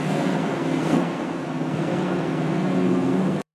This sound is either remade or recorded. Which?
remade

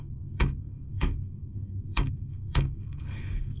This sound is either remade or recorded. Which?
remade